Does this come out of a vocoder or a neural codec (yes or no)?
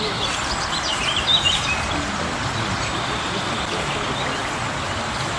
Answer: no